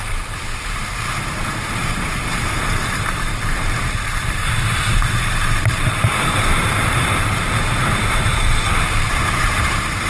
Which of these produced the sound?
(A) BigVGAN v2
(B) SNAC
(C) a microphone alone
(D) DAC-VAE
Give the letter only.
A